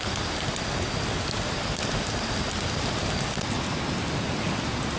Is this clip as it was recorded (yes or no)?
yes